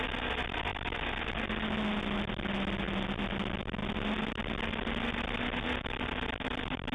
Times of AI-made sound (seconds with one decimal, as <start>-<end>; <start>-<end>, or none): none